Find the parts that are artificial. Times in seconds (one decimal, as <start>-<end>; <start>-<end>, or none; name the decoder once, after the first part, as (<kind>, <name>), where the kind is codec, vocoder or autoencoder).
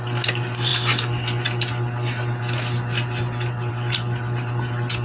none